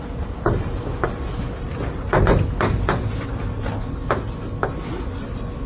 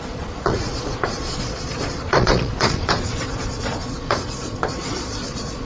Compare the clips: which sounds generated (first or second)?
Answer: second